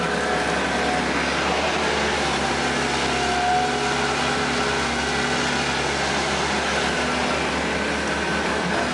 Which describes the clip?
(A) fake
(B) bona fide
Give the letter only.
B